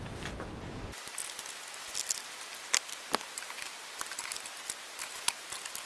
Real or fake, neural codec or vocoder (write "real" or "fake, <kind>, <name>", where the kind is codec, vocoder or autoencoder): real